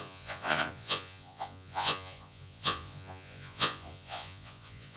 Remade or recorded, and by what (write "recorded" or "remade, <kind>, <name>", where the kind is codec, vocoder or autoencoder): remade, vocoder, Vocos